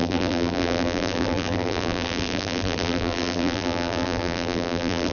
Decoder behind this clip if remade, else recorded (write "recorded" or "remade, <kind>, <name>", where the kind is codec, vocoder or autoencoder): remade, vocoder, BigVGAN v2